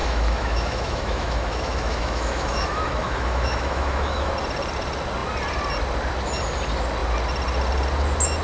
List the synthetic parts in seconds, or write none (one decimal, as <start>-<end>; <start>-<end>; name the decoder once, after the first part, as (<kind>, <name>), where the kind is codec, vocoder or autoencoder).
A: 0.0-4.3 (autoencoder, DAC-VAE)